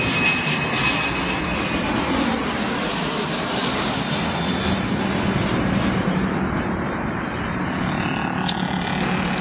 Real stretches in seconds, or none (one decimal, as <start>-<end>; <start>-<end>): 0.0-9.4